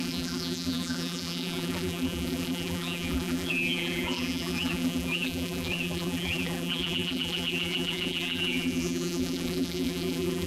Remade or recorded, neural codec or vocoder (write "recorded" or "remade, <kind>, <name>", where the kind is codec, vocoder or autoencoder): remade, vocoder, BigVGAN v2